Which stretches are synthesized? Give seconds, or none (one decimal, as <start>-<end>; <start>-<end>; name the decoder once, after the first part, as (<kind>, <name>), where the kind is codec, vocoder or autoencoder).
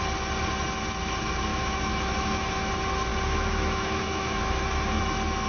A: 1.5-2.7 (autoencoder, DAC-VAE); 3.1-5.0